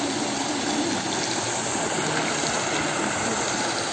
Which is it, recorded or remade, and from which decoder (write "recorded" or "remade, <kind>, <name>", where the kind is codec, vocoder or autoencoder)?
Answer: recorded